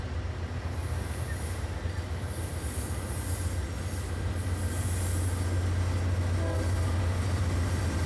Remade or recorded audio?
recorded